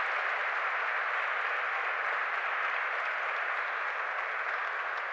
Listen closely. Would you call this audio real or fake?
real